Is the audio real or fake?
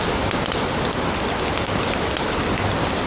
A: real